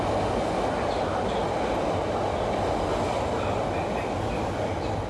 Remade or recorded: recorded